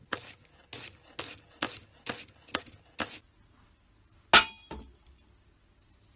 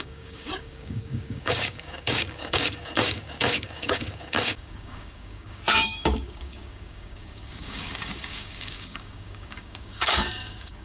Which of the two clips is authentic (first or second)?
first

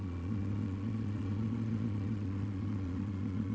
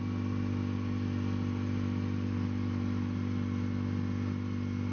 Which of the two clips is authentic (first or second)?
second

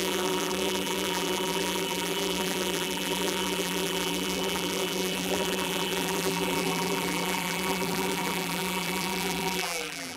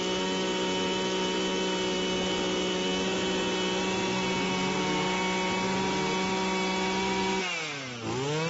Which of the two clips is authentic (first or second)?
second